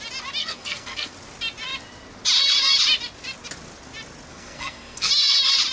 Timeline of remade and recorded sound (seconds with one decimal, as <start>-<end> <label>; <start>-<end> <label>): 0.0-0.4 recorded; 0.4-1.1 remade; 1.1-4.3 recorded; 4.3-5.1 remade; 5.1-5.7 recorded